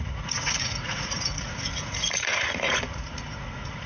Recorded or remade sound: remade